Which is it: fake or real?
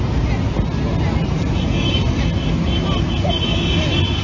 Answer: real